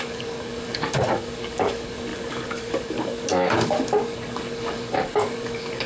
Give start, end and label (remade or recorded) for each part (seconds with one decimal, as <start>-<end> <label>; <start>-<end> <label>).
0.0-5.9 remade